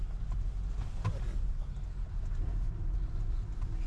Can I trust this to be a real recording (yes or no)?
yes